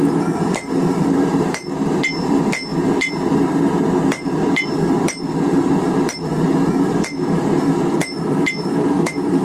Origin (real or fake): fake